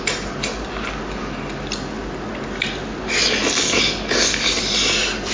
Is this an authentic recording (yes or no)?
yes